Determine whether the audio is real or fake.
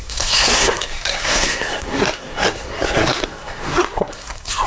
fake